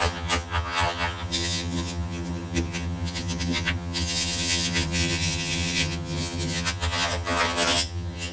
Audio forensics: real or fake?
fake